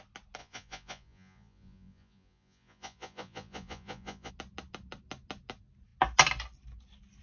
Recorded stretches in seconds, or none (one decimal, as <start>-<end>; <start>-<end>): 0.0-0.4; 4.3-7.2